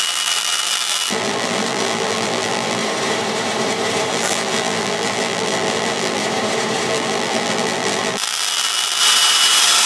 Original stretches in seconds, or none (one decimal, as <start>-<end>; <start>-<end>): 2.8-4.1; 6.2-6.9; 9.0-9.9